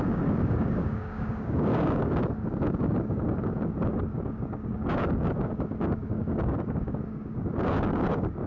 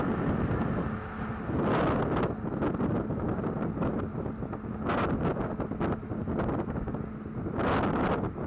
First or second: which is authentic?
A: second